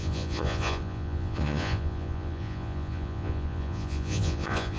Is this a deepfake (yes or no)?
yes